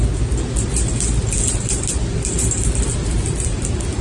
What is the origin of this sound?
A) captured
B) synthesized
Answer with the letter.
A